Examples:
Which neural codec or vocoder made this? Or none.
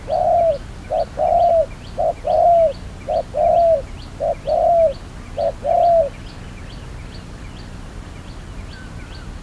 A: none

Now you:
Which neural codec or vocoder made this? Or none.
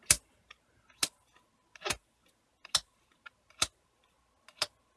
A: none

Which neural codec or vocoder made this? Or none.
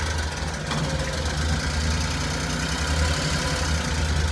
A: none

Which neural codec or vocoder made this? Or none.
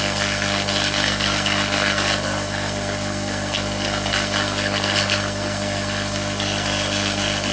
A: codec, SNAC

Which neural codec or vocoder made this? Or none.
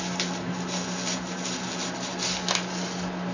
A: none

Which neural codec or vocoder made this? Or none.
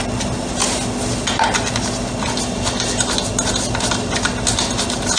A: none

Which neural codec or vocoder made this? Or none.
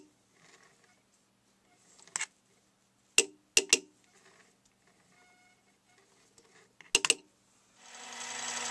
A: none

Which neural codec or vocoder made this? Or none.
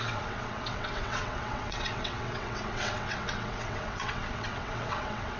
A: vocoder, WaveNeXt